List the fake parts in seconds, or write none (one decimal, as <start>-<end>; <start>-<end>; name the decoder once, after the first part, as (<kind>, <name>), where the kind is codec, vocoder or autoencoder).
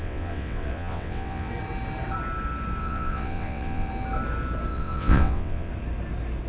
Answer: 0.0-1.5 (vocoder, WaveNeXt); 2.8-3.9; 4.7-5.7